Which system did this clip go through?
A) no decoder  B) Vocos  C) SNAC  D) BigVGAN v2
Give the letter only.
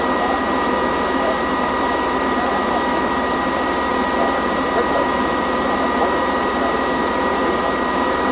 D